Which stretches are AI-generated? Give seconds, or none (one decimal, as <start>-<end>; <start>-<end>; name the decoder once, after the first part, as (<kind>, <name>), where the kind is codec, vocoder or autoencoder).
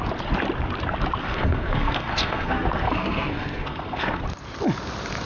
1.2-4.2 (codec, SNAC)